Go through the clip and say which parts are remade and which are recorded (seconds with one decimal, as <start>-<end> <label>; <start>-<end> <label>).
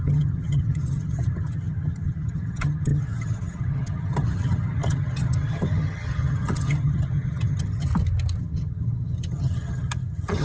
0.0-7.9 remade; 7.9-8.4 recorded; 8.4-10.4 remade